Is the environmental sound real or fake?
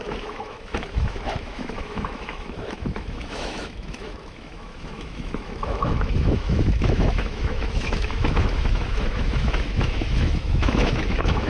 fake